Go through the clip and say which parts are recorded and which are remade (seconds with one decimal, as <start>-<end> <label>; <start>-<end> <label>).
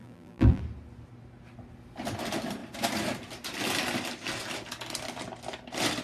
0.0-0.6 remade; 0.6-6.0 recorded